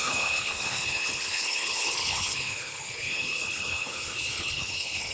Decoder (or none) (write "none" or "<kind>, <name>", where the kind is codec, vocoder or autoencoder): codec, HILCodec